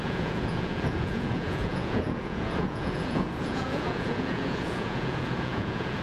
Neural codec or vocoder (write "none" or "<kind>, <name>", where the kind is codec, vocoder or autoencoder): vocoder, Vocos